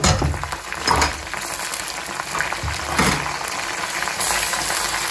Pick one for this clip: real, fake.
real